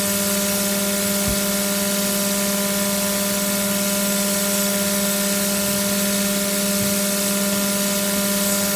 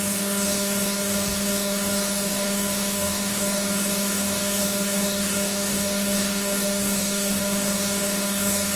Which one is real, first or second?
first